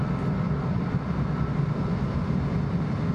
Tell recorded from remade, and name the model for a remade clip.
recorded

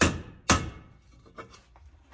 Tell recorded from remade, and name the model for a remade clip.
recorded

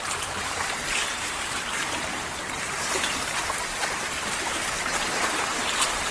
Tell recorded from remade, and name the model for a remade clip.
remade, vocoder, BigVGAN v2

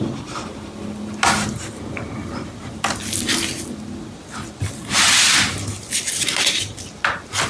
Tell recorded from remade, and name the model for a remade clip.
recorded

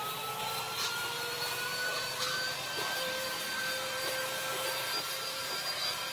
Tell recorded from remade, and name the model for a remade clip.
remade, vocoder, BigVGAN v2